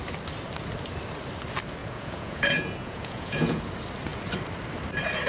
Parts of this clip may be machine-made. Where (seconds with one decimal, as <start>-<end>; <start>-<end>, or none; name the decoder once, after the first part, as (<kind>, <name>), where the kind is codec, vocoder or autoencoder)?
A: 1.8-3.6 (vocoder, Vocos)